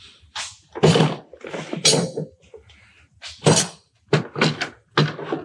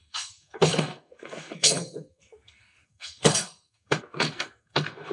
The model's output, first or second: second